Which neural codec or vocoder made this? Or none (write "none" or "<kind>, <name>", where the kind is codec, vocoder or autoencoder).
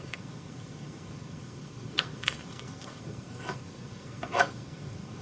codec, SNAC